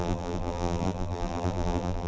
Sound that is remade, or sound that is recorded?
remade